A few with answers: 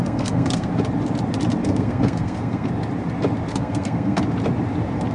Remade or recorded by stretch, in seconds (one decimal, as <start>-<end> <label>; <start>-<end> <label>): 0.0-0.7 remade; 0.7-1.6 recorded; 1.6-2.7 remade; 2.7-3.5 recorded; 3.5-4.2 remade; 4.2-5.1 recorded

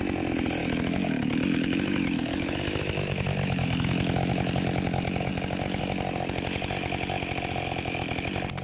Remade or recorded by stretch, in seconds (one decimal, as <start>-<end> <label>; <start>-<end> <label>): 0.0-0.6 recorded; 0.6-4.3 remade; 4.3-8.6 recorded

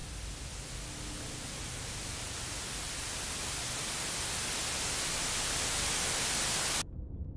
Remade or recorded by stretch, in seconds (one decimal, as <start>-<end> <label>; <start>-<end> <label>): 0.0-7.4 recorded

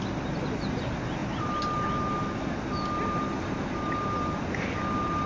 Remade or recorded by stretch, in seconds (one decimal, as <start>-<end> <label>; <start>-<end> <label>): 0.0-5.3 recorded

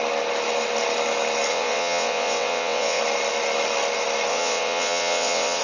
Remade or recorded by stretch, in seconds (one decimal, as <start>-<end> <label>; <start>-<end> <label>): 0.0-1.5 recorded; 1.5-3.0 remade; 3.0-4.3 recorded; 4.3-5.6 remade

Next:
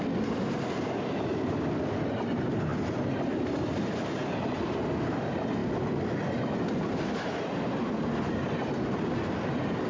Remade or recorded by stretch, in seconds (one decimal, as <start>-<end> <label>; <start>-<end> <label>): 0.0-2.7 remade; 2.7-3.7 recorded; 3.7-5.6 remade; 5.6-7.9 recorded; 7.9-9.9 remade

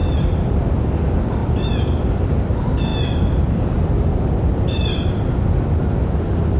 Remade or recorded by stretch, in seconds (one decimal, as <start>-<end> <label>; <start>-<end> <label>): 0.0-0.5 remade; 0.5-1.4 recorded; 1.4-2.0 remade; 2.0-6.6 recorded